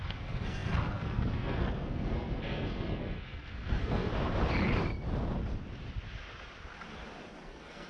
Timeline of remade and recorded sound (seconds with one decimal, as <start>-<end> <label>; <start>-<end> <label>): 0.0-4.1 remade; 4.1-7.4 recorded; 7.4-7.9 remade